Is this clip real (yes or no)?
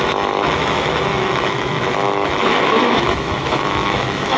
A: no